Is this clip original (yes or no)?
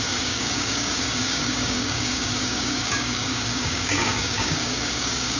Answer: no